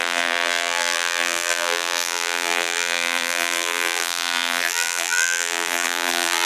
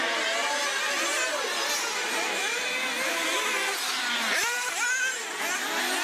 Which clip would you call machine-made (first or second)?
first